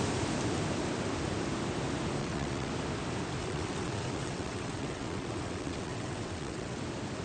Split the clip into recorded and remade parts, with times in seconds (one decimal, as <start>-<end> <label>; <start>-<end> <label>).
0.0-2.2 recorded; 2.2-2.7 remade; 2.7-3.4 recorded; 3.4-6.8 remade; 6.8-7.2 recorded